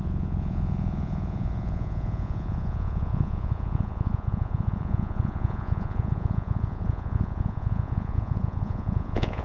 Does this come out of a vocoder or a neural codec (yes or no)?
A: yes